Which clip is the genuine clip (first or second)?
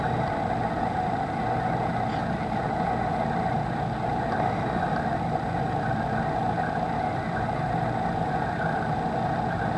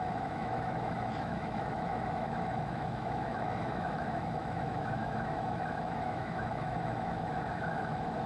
first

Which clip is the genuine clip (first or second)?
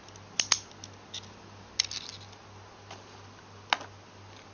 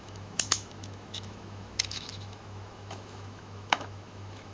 first